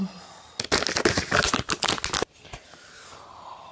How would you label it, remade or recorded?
recorded